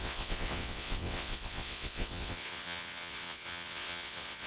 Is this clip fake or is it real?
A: fake